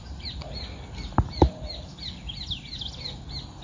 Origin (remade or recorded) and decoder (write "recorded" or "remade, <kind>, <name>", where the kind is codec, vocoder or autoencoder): recorded